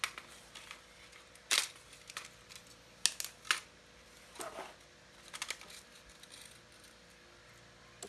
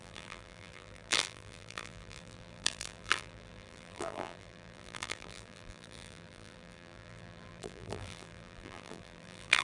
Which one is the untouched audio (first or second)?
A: first